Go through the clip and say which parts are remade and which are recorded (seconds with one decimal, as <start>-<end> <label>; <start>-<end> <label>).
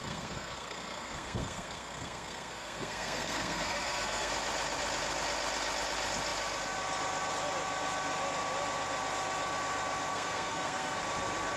0.0-4.3 remade; 4.3-10.1 recorded; 10.1-11.0 remade; 11.0-11.6 recorded